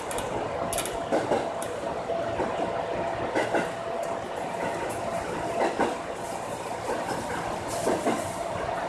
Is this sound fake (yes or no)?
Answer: no